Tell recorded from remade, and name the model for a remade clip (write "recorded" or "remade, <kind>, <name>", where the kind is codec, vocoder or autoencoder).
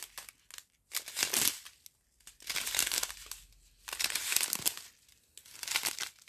recorded